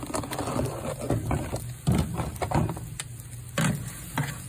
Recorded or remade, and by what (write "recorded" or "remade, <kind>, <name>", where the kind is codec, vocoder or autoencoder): recorded